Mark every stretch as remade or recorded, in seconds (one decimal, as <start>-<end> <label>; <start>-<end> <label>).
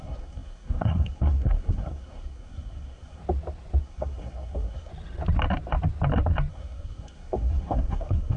0.0-3.2 remade; 3.2-3.8 recorded; 3.8-4.9 remade; 4.9-6.5 recorded; 6.5-8.4 remade